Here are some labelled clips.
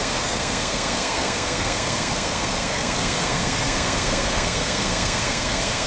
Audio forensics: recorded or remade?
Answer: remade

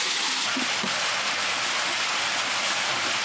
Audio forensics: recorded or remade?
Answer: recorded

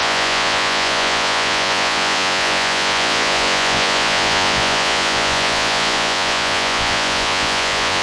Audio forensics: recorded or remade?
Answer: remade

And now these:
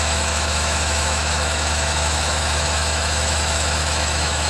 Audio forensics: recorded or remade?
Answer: remade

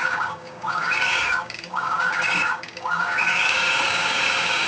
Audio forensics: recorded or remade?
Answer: remade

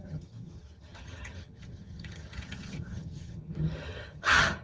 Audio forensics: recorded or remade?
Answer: remade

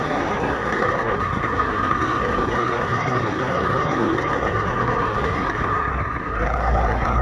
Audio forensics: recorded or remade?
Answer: remade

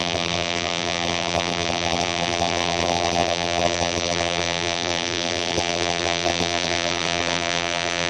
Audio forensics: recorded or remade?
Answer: remade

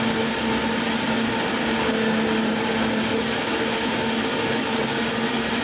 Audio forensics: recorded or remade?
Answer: recorded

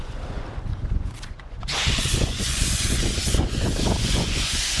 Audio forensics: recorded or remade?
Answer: remade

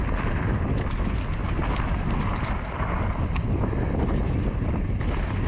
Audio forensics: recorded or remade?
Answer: recorded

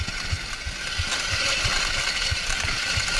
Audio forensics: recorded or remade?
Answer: recorded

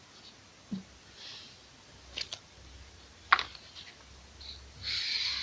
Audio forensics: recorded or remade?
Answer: recorded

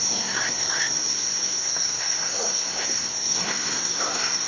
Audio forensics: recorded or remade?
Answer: remade